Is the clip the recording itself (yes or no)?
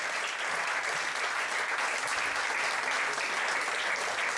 yes